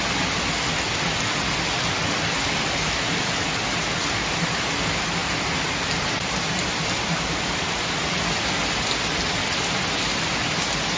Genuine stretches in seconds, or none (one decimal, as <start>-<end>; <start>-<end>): 0.0-5.2; 8.0-11.0